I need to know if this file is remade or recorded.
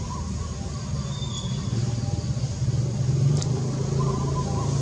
recorded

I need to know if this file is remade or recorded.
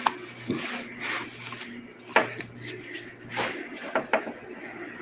recorded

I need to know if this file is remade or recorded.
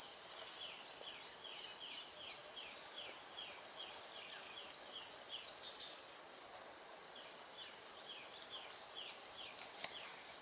recorded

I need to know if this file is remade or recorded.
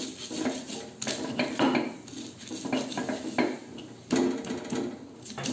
recorded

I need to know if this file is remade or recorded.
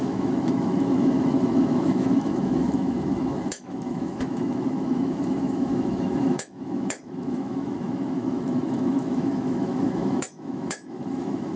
remade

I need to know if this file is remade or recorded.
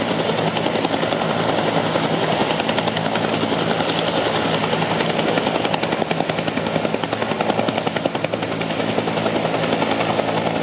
recorded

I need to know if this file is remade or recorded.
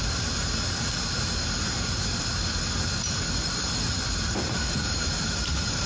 remade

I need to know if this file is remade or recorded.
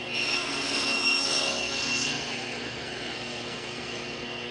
remade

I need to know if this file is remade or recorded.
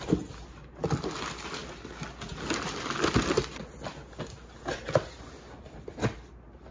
recorded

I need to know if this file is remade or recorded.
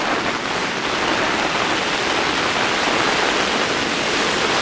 recorded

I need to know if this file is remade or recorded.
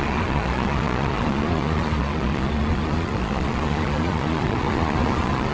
remade